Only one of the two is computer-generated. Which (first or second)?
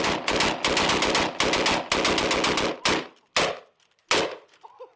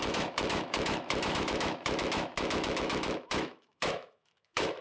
second